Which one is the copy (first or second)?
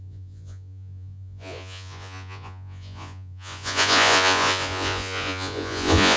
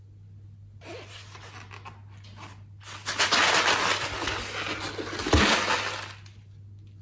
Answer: first